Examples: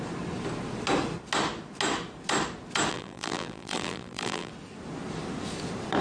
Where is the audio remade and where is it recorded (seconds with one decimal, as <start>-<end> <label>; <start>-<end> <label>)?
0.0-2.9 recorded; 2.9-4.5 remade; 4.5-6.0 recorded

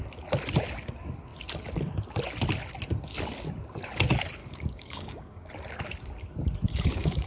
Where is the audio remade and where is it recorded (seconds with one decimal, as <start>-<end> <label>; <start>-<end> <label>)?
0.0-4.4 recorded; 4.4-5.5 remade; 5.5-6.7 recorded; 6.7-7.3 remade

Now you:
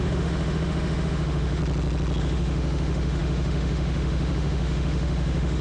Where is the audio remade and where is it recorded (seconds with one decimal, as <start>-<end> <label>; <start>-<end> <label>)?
0.0-1.6 remade; 1.6-2.2 recorded; 2.2-5.6 remade

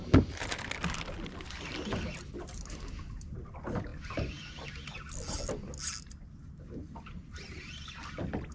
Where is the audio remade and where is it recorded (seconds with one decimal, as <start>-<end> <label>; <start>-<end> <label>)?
0.0-8.5 recorded